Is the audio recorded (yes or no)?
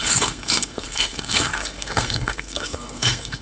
no